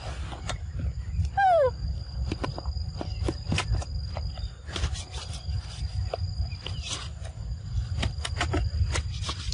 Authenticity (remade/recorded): recorded